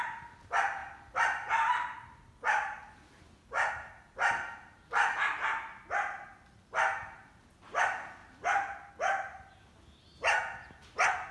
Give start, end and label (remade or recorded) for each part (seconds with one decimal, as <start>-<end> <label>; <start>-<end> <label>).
0.0-11.3 recorded